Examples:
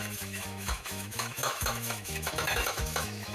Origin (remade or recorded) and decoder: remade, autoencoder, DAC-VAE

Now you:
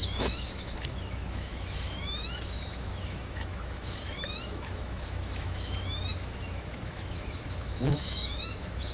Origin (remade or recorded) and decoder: remade, autoencoder, DAC-VAE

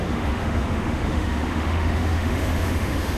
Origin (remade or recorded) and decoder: remade, autoencoder, DAC-VAE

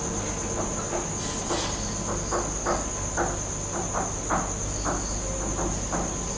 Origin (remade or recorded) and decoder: recorded